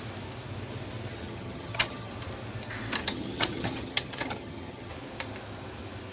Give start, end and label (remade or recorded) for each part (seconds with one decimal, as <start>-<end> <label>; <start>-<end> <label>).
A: 0.0-1.1 recorded; 1.1-2.1 remade; 2.1-3.0 recorded; 3.0-4.9 remade; 4.9-6.1 recorded